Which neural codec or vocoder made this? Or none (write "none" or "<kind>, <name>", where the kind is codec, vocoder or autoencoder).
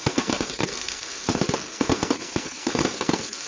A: codec, SNAC